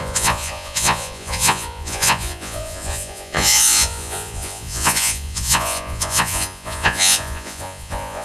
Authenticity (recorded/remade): remade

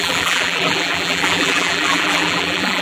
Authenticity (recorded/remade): remade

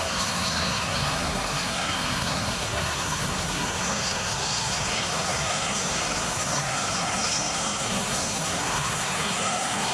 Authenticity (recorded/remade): remade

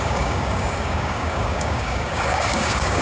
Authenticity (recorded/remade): remade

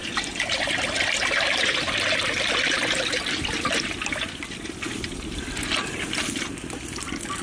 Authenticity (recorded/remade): recorded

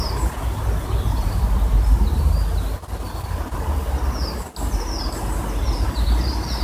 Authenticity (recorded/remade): recorded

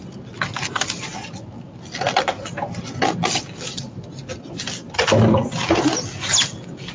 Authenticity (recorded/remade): recorded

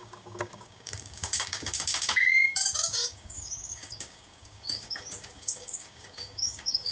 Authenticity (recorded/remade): remade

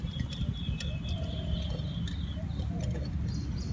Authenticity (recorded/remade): recorded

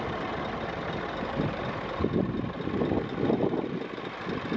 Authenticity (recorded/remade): recorded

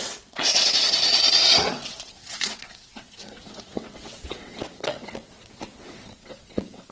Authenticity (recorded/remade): remade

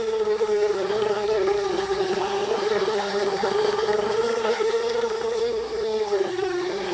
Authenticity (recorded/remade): remade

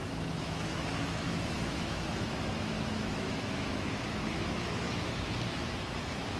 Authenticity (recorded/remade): remade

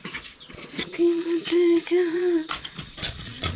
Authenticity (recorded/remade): remade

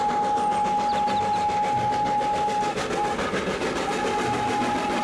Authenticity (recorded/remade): recorded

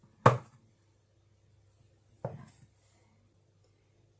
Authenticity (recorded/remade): recorded